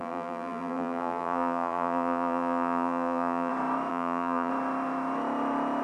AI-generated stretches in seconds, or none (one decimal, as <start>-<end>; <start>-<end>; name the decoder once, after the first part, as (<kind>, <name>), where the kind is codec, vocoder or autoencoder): 0.0-3.5 (vocoder, BigVGAN v2); 3.9-4.5